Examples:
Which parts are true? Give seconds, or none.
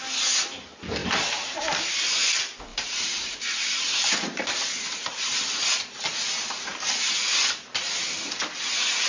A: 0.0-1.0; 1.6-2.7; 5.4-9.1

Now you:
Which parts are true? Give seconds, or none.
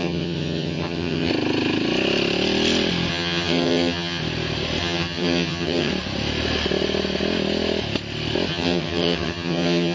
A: 1.3-3.1; 4.2-4.8; 5.9-8.5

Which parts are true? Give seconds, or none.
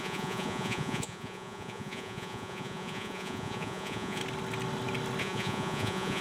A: 4.2-5.2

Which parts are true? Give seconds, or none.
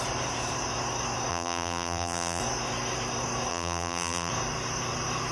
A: 0.0-1.3; 2.4-3.5; 4.3-5.3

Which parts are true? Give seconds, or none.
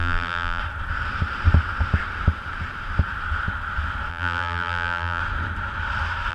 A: 0.6-4.1; 5.2-6.3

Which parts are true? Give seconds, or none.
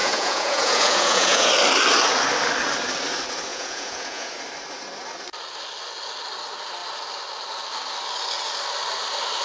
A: 1.5-3.5; 4.4-9.4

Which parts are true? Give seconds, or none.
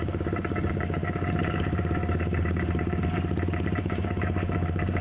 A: 3.0-3.8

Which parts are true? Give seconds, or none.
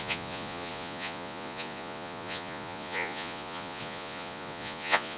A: none